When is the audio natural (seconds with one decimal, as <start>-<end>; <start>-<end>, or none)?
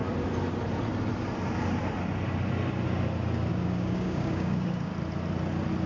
0.0-3.5; 4.9-5.9